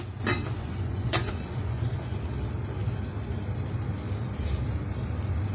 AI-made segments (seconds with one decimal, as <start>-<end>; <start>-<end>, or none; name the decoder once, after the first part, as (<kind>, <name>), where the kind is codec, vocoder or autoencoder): 0.6-2.2 (vocoder, Vocos)